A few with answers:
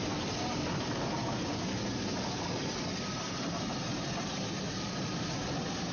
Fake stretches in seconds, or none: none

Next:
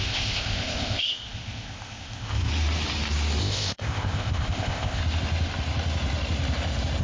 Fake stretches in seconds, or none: 0.0-2.5 (codec, ZipCodec); 3.4-5.0

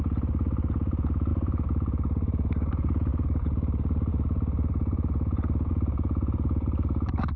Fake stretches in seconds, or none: none

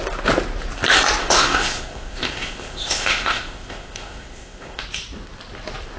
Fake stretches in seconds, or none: 1.2-4.8 (codec, ZipCodec)

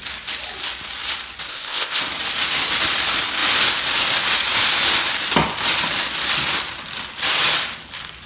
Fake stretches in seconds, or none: 1.5-2.0 (codec, ZipCodec)

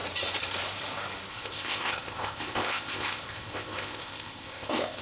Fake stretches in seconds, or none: 1.3-5.0 (codec, ZipCodec)